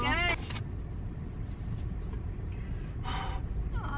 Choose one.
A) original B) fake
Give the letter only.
A